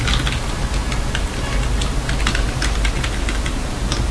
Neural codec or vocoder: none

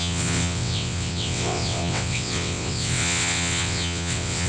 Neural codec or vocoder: vocoder, WaveNeXt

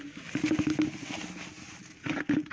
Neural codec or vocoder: none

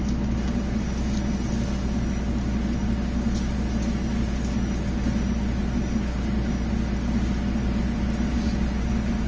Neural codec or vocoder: none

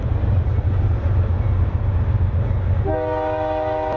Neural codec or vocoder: none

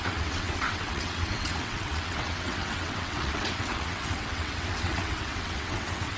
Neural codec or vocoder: vocoder, WaveNeXt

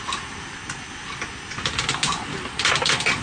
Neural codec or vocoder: none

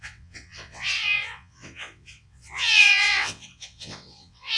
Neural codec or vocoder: vocoder, WaveNeXt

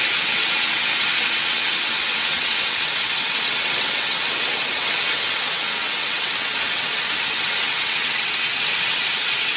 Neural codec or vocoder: vocoder, WaveNeXt